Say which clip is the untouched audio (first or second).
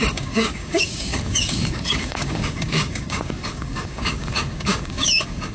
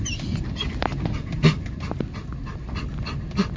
second